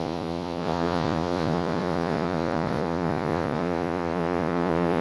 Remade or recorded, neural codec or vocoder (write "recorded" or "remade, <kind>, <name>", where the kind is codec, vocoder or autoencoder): remade, vocoder, Vocos